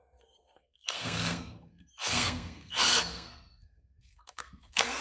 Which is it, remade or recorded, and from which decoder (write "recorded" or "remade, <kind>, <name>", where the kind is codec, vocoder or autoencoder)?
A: remade, codec, SNAC